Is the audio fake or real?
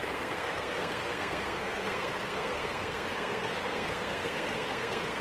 fake